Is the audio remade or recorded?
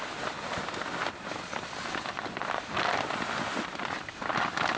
recorded